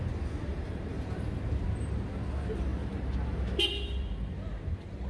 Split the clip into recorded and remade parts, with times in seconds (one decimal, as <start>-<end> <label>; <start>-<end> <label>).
0.0-0.5 recorded; 0.5-1.4 remade; 1.4-5.1 recorded